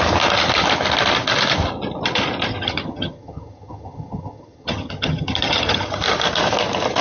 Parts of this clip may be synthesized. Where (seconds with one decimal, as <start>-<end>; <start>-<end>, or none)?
2.5-6.0